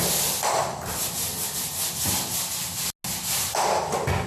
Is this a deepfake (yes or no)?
no